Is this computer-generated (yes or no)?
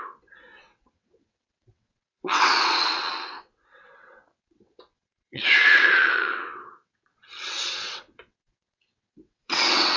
yes